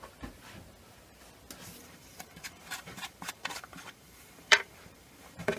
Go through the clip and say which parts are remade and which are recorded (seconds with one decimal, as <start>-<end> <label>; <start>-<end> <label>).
0.0-1.8 recorded; 1.8-5.6 remade